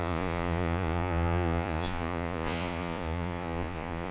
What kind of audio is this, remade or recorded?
remade